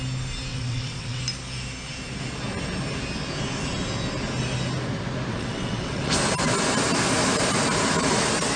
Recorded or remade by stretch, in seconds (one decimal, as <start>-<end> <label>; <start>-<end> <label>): 0.0-0.5 recorded; 0.5-1.2 remade; 1.2-5.3 recorded; 5.3-6.1 remade; 6.1-8.6 recorded